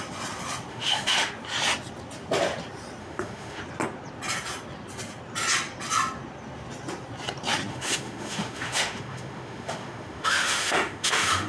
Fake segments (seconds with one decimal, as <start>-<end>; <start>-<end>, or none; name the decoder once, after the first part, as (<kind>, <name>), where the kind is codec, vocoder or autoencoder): 0.7-1.3 (autoencoder, DAC-VAE); 3.0-3.6; 7.7-11.5